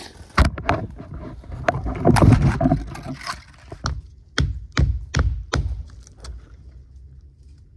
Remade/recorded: recorded